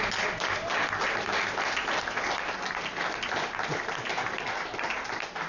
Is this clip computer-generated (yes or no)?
no